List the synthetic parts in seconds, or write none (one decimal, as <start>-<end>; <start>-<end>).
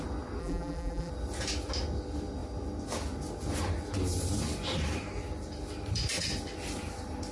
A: 0.4-1.1